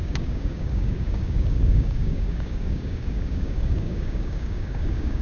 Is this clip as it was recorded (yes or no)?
no